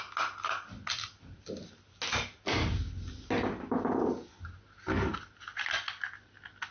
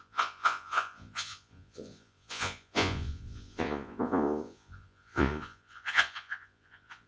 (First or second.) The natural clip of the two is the first